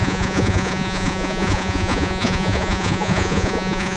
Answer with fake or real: fake